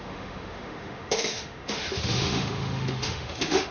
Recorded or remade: remade